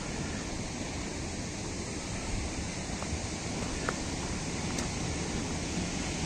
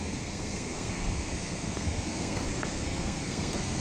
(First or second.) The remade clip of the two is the second